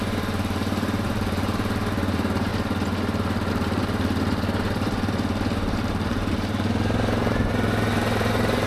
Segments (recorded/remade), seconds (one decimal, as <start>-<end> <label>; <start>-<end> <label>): 0.0-2.5 remade; 2.5-3.5 recorded; 3.5-8.7 remade